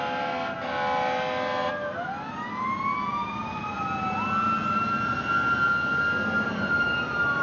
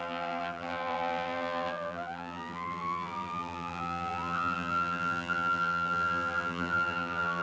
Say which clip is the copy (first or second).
second